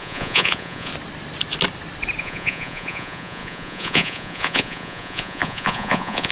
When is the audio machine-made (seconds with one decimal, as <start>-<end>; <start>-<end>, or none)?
0.0-0.9; 2.2-6.3